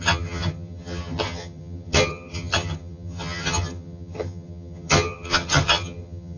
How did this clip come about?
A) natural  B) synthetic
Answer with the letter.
B